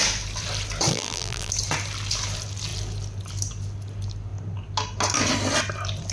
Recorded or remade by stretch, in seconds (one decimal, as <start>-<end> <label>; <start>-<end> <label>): 0.0-0.9 recorded; 0.9-1.5 remade; 1.5-6.1 recorded